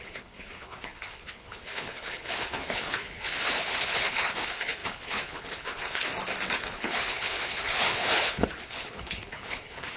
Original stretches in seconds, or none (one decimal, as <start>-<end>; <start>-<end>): 6.1-6.6